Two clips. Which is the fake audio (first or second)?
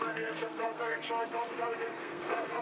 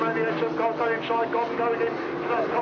first